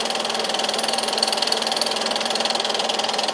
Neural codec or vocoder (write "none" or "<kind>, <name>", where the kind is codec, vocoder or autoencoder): vocoder, BigVGAN v2